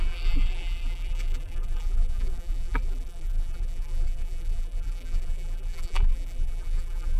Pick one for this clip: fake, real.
fake